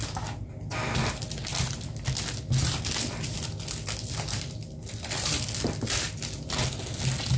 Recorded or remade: recorded